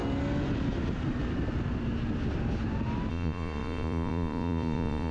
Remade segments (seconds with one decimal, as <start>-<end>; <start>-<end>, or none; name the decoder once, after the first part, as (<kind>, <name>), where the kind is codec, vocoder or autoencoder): 3.1-5.1 (vocoder, Vocos)